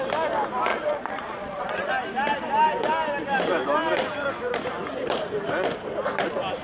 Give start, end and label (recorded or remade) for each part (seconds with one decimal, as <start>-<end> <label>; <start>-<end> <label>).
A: 0.0-0.7 recorded; 0.7-1.9 remade; 1.9-6.6 recorded